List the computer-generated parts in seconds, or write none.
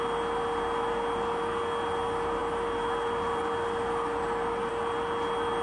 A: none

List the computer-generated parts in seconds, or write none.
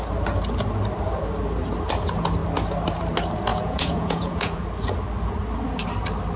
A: 3.5-4.6 (vocoder, Vocos)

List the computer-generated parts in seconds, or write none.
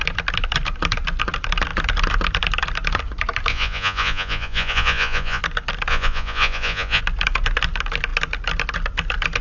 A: 3.5-5.4 (vocoder, Vocos); 5.9-7.0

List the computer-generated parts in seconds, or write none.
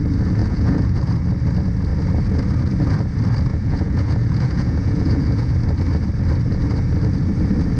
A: 0.4-1.0 (vocoder, Vocos); 3.5-5.5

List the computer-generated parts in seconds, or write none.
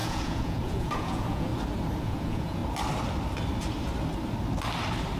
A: 0.0-1.5 (vocoder, Vocos); 2.0-2.6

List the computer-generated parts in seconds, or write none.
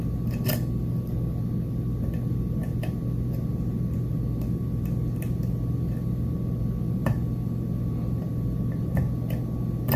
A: none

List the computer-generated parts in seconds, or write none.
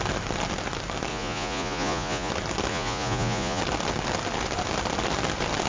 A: 1.1-2.3 (vocoder, Vocos); 2.7-3.6